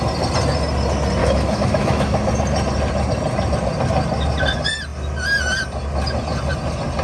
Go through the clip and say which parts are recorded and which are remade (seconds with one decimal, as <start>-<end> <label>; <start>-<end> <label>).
0.0-1.2 recorded; 1.2-2.3 remade; 2.3-7.0 recorded